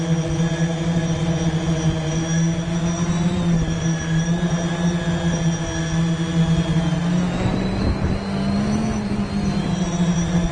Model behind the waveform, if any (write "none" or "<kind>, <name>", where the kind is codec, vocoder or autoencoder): none